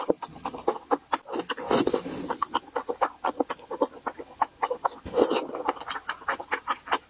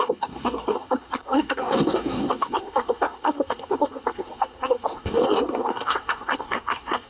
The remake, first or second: second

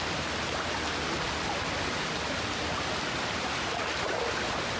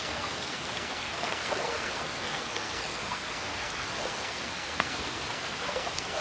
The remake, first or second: second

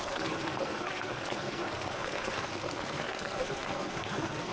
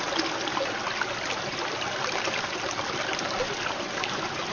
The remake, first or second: first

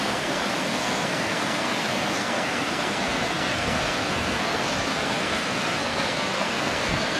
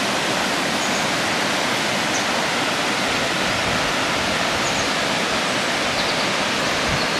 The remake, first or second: first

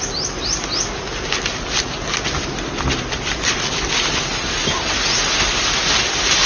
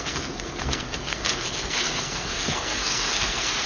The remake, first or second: second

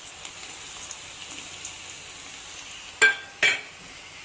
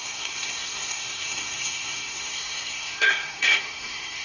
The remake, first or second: second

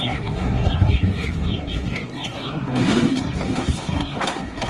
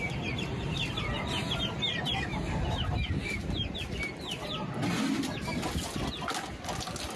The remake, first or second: first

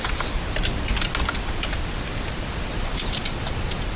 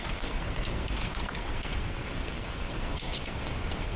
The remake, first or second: second